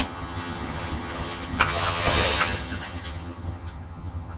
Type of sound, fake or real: fake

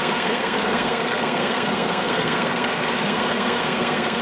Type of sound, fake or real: fake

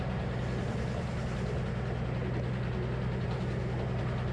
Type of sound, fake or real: real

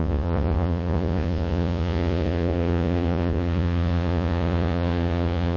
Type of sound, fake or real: fake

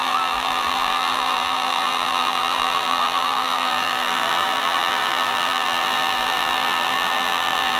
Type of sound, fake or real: fake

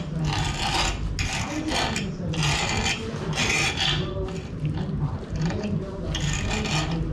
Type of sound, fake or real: real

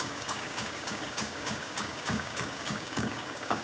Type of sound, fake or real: fake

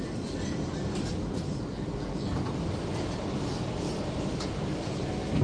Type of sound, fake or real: real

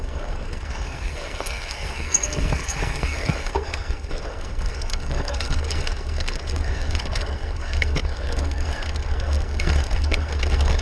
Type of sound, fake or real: fake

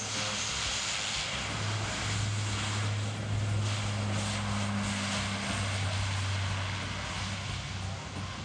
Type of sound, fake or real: real